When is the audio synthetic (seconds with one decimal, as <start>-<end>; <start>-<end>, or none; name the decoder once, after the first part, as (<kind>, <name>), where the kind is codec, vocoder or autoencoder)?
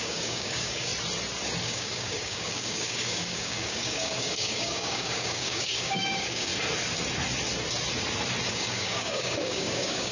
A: 0.0-0.9 (codec, DAC); 1.6-6.5; 8.5-10.1